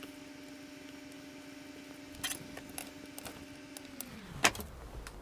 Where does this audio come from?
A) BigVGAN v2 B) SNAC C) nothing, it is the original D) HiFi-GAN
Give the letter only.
C